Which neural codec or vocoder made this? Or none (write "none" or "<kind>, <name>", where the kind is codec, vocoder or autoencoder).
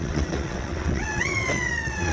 vocoder, WaveNeXt